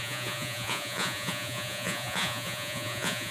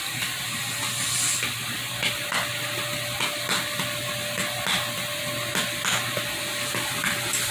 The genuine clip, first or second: second